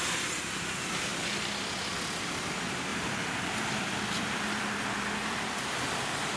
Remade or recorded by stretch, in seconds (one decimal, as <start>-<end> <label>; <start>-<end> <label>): 0.0-1.1 remade; 1.1-2.2 recorded; 2.2-6.4 remade